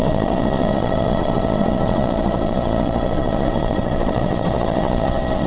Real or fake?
fake